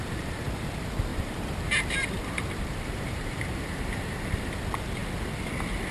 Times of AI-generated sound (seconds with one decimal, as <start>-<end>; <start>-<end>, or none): 1.1-4.5